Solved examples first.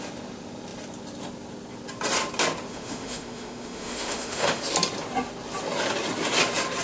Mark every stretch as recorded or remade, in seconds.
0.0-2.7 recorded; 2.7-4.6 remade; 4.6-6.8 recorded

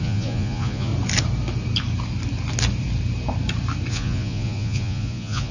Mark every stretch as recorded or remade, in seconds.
0.0-0.9 remade; 0.9-3.9 recorded; 3.9-5.5 remade

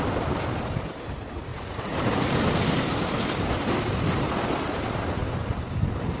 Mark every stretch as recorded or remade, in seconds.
0.0-1.5 recorded; 1.5-2.6 remade; 2.6-5.5 recorded; 5.5-6.2 remade

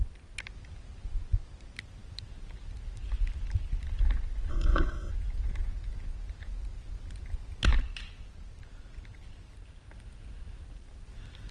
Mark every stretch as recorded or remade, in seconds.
0.0-4.5 recorded; 4.5-5.1 remade; 5.1-11.5 recorded

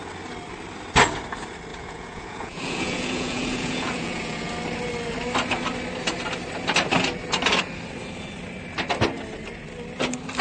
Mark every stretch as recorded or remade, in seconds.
0.0-1.7 recorded; 1.7-4.5 remade; 4.5-10.4 recorded